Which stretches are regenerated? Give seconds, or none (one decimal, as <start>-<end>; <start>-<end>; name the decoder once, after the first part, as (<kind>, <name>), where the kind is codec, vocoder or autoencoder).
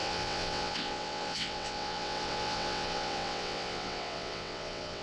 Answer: 0.0-5.0 (vocoder, WaveNeXt)